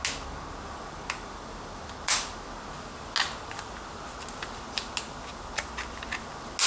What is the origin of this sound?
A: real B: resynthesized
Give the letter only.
A